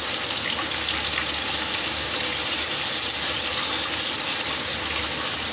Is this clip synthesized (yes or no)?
no